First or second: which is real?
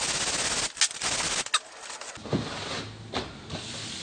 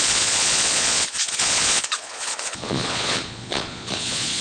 first